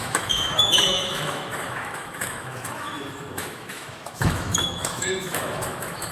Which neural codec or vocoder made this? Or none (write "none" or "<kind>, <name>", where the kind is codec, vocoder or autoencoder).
autoencoder, DAC-VAE